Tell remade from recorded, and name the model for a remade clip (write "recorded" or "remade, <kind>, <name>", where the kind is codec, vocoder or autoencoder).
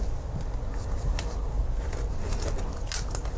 recorded